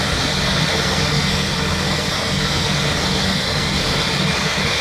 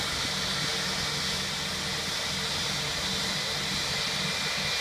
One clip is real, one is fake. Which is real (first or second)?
second